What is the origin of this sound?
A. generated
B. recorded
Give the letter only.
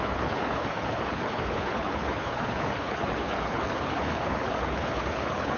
A